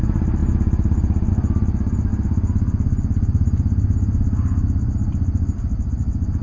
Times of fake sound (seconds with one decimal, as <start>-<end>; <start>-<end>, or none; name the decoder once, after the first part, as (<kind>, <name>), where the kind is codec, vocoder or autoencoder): 0.0-2.1 (vocoder, BigVGAN v2); 5.9-6.4